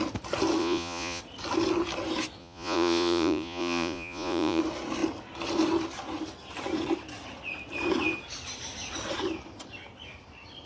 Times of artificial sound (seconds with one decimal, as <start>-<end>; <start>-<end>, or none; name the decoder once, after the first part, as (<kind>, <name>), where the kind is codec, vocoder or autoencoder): 0.6-1.2 (vocoder, Vocos); 2.4-4.6